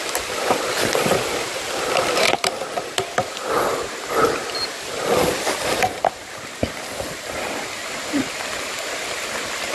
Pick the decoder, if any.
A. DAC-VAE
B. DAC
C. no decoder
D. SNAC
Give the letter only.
C